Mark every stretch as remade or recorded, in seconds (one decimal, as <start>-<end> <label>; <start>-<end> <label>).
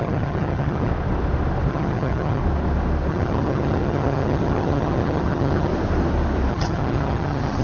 0.0-0.9 remade; 0.9-1.7 recorded; 1.7-2.4 remade; 2.4-3.1 recorded; 3.1-5.7 remade; 5.7-6.5 recorded; 6.5-7.6 remade